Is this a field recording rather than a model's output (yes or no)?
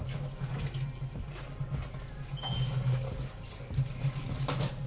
yes